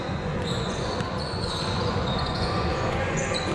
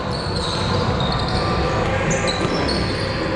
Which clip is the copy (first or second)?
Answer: first